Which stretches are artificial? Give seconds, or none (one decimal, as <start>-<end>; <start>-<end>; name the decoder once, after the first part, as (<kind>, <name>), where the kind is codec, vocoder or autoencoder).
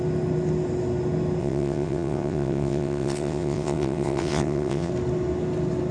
1.4-4.9 (vocoder, WaveNeXt)